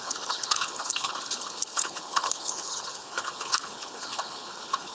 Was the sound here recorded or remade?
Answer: remade